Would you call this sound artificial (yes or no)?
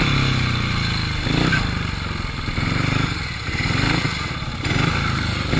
no